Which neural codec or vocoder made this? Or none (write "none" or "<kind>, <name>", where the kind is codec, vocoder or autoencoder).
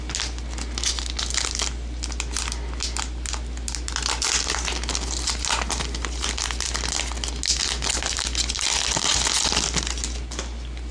none